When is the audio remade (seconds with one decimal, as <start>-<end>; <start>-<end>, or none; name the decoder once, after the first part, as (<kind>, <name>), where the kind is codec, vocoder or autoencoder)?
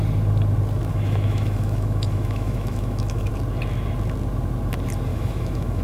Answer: 0.9-3.3 (autoencoder, DAC-VAE); 5.1-5.8